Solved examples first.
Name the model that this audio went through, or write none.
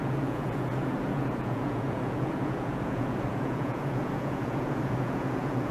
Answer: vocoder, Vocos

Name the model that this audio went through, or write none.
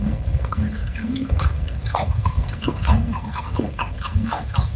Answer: codec, SNAC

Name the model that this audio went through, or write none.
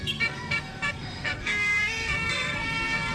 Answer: codec, SNAC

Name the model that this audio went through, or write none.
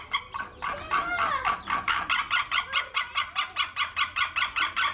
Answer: none